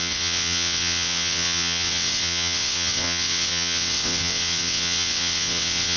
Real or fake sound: fake